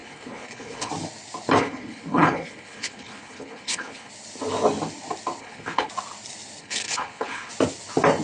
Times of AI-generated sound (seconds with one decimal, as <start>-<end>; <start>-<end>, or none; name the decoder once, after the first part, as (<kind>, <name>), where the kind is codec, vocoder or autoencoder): 0.0-0.9 (codec, HILCodec); 1.6-4.1; 5.4-5.9; 6.6-7.5